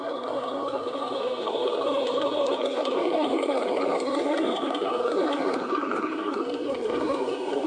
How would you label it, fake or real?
fake